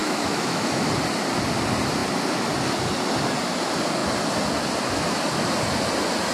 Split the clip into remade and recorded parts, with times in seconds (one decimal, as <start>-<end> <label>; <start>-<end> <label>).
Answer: 0.0-0.9 remade; 0.9-6.3 recorded